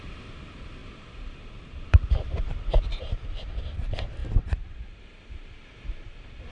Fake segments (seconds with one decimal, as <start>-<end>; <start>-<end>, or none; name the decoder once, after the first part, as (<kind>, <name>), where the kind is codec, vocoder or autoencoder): 0.0-6.5 (vocoder, BigVGAN v2)

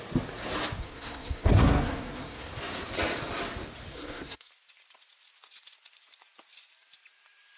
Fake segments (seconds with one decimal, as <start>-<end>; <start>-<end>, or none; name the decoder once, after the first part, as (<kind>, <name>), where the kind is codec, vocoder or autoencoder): 0.8-2.5 (codec, SNAC); 3.9-4.5